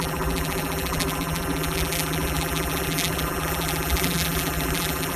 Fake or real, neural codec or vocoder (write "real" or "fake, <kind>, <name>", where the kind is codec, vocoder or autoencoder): fake, vocoder, BigVGAN v2